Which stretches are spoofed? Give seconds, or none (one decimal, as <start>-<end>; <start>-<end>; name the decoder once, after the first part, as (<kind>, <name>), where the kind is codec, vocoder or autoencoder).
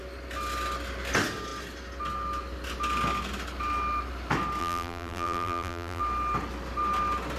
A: 4.6-6.0 (vocoder, BigVGAN v2)